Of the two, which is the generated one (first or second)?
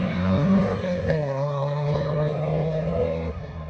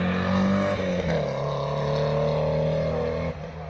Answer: first